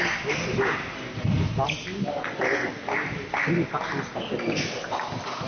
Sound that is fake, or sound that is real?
real